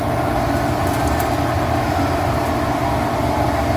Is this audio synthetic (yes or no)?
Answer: no